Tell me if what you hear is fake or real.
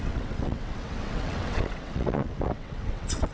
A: fake